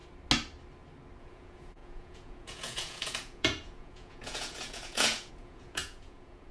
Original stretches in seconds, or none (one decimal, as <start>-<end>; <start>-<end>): 0.0-1.2

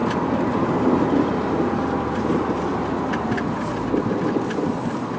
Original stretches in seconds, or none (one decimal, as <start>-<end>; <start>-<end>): 0.0-5.2

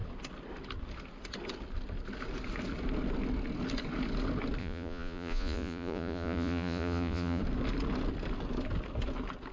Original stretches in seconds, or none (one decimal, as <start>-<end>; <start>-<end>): 0.0-4.6; 7.4-9.5

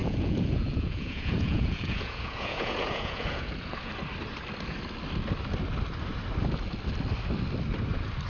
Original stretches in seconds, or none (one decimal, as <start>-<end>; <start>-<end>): 3.9-8.3

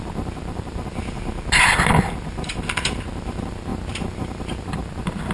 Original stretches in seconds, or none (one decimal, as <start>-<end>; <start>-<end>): 0.0-5.3